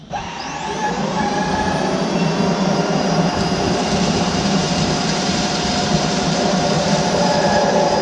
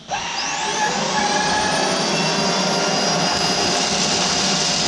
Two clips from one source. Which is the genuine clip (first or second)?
second